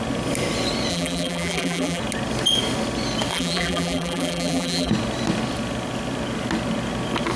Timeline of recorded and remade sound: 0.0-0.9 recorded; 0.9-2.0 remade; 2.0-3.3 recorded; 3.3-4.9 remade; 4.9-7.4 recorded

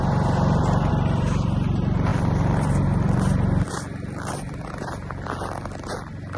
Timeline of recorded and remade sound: 0.0-6.4 remade

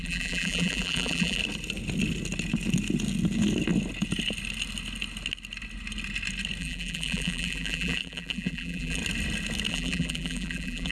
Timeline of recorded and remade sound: 0.0-1.4 remade; 1.4-6.6 recorded; 6.6-9.0 remade; 9.0-9.7 recorded; 9.7-10.9 remade

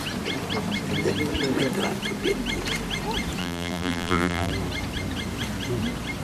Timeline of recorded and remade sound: 0.0-3.4 recorded; 3.4-4.5 remade; 4.5-6.2 recorded